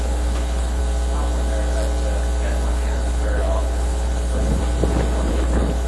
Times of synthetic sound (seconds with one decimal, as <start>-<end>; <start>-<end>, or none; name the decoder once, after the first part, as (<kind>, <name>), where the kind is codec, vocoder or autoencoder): 0.0-0.8 (codec, HILCodec); 2.7-4.6; 5.3-5.9